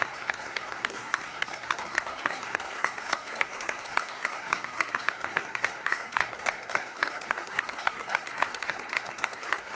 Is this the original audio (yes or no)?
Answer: no